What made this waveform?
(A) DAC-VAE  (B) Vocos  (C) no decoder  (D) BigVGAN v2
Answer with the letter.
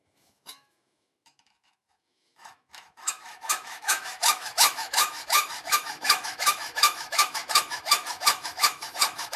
A